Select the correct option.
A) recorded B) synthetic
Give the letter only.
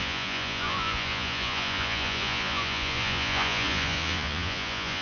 B